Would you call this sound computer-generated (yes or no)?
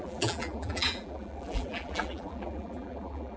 yes